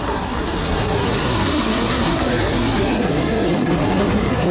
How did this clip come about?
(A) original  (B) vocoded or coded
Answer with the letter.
B